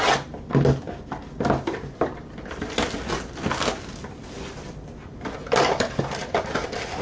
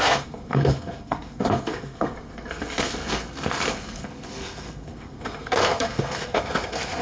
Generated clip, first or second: second